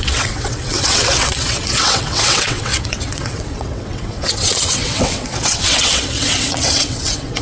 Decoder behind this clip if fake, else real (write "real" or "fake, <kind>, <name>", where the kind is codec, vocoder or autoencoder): fake, vocoder, WaveNeXt